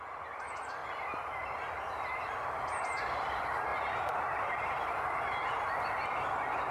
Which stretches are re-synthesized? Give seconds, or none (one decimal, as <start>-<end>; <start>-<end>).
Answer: 0.8-1.7; 3.7-5.0